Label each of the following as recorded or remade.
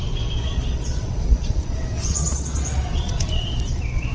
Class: remade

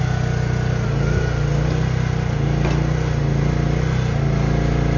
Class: recorded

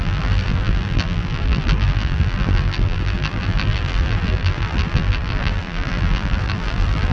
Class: remade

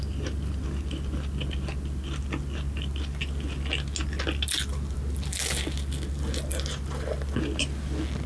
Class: recorded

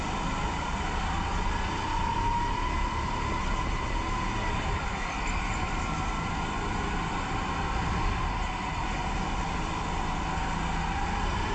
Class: recorded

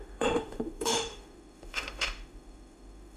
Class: remade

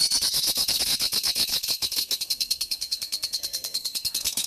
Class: remade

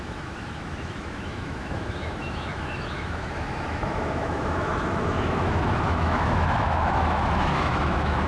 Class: remade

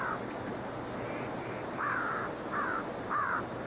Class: remade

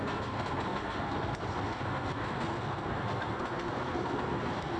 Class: remade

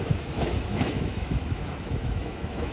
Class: remade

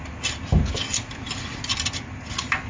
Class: recorded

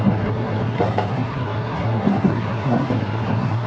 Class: remade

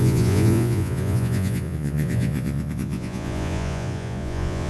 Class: remade